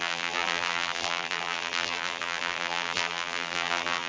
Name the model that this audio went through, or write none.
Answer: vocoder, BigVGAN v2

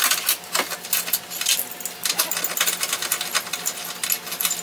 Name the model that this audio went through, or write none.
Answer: none